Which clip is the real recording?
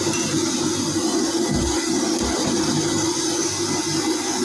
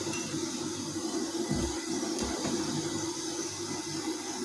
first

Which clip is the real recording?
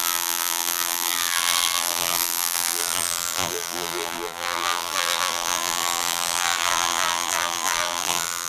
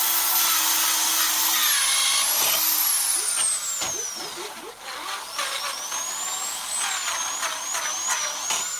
second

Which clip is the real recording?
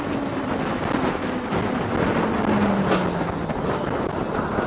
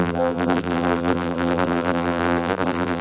first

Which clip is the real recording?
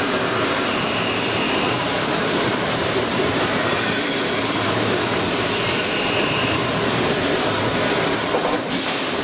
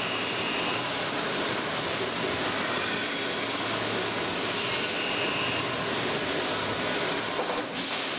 second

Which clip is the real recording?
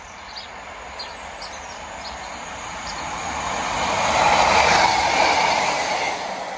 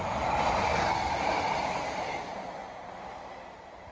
first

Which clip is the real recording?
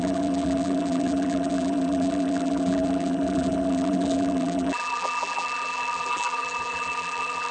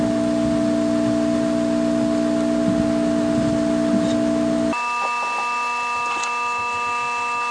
second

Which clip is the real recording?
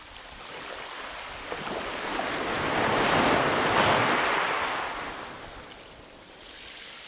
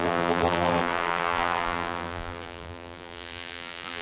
first